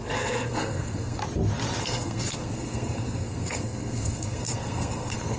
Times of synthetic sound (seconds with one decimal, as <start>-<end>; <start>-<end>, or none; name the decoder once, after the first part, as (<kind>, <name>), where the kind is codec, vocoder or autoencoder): 0.0-1.2 (codec, SNAC); 1.8-5.4